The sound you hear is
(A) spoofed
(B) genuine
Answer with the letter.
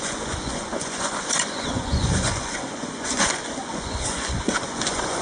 A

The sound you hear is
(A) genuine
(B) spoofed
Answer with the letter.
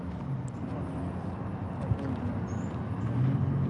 A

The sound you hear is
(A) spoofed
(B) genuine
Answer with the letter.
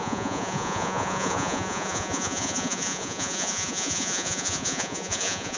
A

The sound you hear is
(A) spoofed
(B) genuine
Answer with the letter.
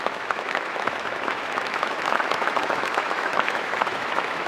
A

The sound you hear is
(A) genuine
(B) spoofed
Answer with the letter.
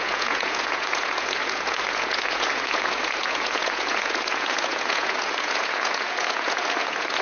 B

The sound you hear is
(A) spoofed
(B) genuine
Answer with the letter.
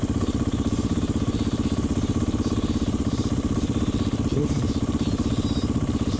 B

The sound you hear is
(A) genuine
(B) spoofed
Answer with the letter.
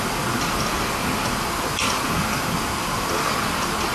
A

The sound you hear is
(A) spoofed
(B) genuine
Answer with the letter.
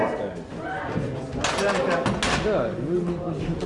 B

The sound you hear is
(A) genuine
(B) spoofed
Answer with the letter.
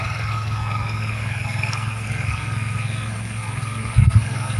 B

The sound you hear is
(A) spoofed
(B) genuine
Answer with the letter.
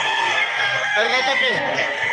A